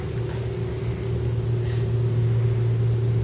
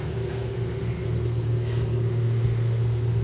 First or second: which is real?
first